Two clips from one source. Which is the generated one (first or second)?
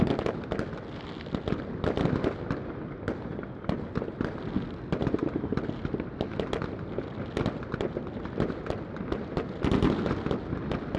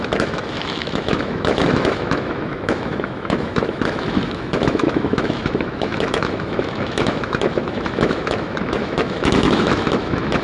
second